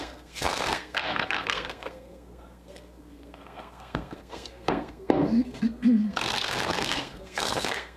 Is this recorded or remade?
remade